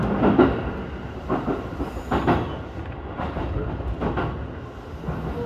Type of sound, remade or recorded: recorded